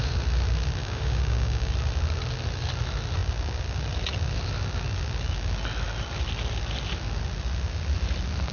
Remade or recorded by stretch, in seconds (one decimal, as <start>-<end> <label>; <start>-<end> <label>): 0.0-0.8 recorded; 0.8-1.7 remade; 1.7-8.5 recorded